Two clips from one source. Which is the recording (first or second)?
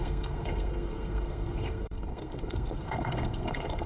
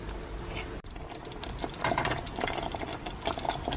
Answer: second